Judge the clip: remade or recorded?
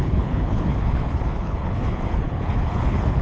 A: remade